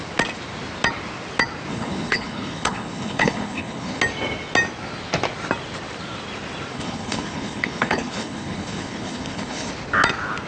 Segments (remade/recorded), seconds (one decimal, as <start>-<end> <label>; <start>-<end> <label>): 0.0-1.7 recorded; 1.7-4.0 remade; 4.0-6.7 recorded; 6.7-9.7 remade; 9.7-10.5 recorded